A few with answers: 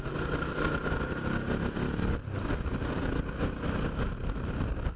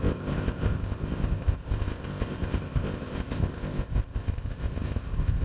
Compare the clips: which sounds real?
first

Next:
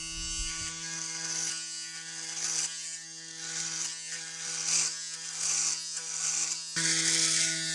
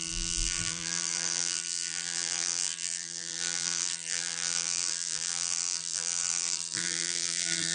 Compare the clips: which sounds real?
first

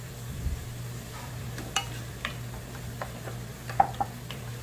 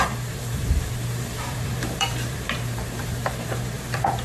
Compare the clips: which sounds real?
first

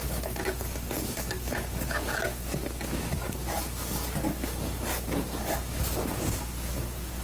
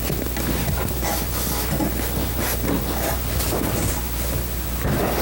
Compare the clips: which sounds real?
second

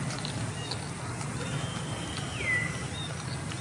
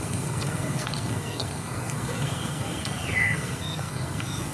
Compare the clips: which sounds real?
first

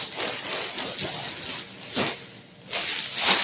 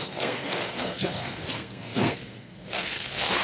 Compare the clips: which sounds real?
first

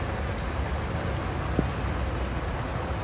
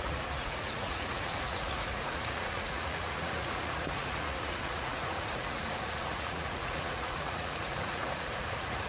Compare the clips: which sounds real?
first